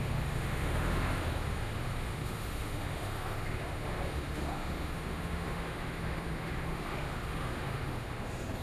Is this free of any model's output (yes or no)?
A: no